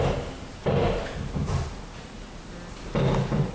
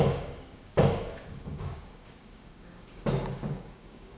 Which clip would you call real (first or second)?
first